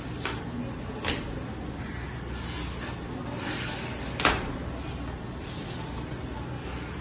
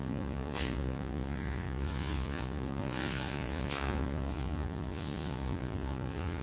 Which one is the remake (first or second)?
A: second